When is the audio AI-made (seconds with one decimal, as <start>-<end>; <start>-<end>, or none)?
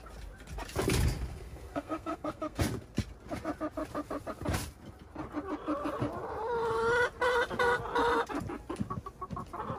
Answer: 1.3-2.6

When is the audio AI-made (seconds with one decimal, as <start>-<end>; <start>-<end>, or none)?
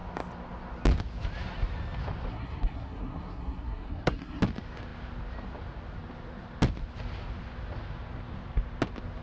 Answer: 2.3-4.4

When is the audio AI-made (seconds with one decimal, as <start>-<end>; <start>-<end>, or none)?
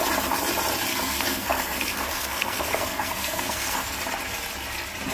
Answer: 0.9-4.0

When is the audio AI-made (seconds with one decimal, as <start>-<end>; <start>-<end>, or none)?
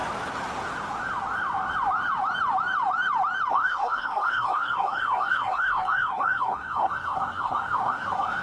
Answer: 3.5-8.4